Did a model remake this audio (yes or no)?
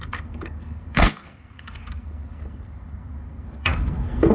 yes